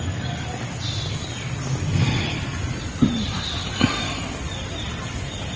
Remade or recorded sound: recorded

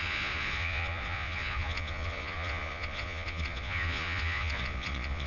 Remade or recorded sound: remade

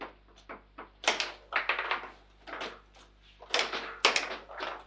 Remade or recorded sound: recorded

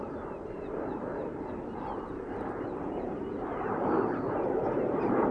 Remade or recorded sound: remade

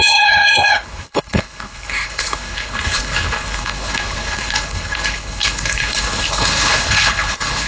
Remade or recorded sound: remade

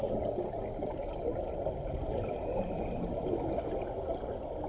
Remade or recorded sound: recorded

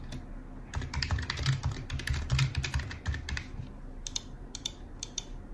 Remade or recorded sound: recorded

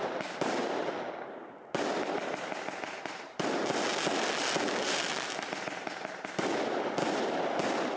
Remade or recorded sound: recorded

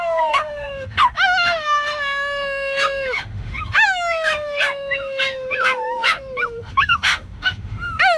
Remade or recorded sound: remade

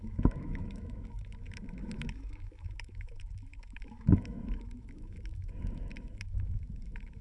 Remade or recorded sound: remade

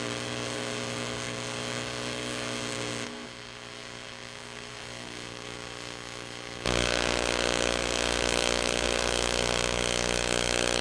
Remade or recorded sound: remade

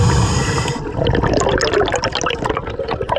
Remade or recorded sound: recorded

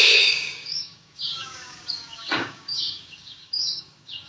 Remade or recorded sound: remade